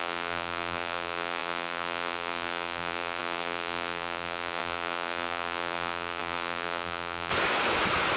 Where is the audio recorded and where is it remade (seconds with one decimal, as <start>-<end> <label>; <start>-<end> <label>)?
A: 0.0-7.3 remade; 7.3-8.2 recorded